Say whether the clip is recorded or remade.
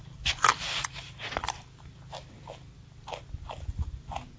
recorded